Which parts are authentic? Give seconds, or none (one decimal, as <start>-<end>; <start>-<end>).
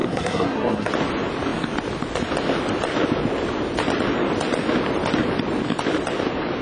0.9-6.6